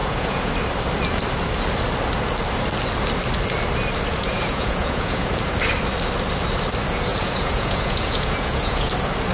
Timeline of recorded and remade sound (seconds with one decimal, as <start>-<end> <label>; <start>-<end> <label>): 0.0-0.5 remade; 0.5-4.1 recorded; 4.1-5.3 remade; 5.3-7.1 recorded; 7.1-8.9 remade; 8.9-9.3 recorded